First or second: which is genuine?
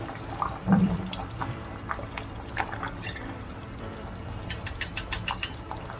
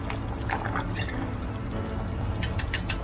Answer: second